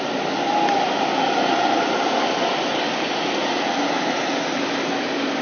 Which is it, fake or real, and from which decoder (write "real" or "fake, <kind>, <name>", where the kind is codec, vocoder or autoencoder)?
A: real